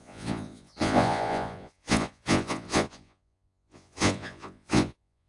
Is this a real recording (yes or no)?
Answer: no